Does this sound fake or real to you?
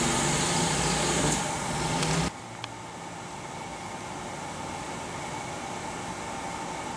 real